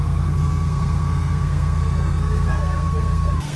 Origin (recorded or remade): remade